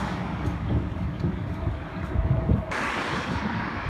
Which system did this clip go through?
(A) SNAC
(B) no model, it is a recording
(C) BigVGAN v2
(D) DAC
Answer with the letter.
D